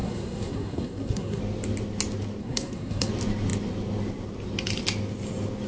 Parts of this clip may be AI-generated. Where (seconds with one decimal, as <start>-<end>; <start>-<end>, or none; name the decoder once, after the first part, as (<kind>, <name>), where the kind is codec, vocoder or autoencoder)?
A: 0.0-1.4 (codec, SNAC); 2.4-3.1